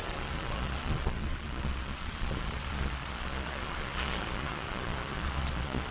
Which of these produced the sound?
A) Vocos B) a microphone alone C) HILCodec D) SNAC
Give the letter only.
A